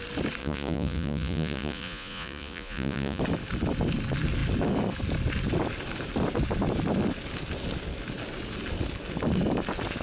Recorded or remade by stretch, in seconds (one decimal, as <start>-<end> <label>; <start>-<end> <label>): 0.0-0.4 recorded; 0.4-3.2 remade; 3.2-10.0 recorded